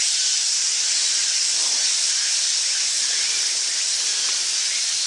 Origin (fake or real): real